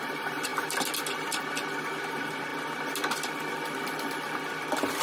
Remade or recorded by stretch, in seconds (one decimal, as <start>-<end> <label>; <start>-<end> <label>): 0.0-0.5 remade; 0.5-2.0 recorded; 2.0-2.5 remade; 2.5-5.0 recorded